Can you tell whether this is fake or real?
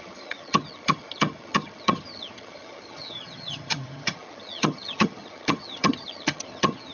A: fake